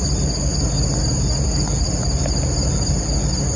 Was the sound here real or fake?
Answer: real